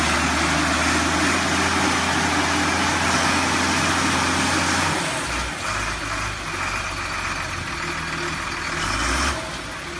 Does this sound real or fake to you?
real